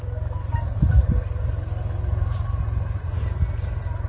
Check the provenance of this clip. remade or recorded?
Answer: recorded